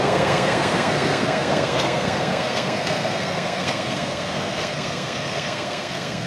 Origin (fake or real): fake